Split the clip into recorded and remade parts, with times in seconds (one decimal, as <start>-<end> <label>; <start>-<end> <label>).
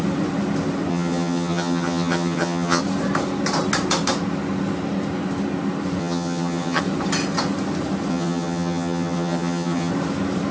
0.0-0.9 recorded; 0.9-2.8 remade; 2.8-6.0 recorded; 6.0-6.8 remade; 6.8-8.1 recorded; 8.1-9.9 remade; 9.9-10.5 recorded